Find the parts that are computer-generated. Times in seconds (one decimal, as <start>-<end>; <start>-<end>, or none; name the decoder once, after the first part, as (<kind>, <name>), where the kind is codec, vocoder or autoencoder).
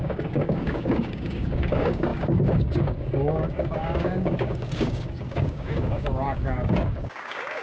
0.0-7.6 (codec, DAC)